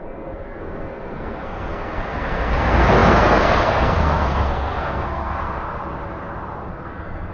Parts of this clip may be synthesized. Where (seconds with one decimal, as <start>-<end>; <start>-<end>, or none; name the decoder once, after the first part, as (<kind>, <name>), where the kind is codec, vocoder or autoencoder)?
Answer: 0.0-5.8 (codec, SNAC); 6.7-7.3